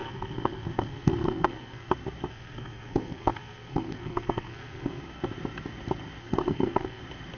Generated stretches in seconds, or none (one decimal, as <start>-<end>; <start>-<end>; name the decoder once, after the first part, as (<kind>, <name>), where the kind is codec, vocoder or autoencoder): 0.0-1.9 (codec, SNAC); 2.3-5.0; 6.2-7.0